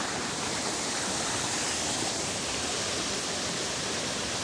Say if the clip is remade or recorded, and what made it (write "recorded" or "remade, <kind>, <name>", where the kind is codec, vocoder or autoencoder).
recorded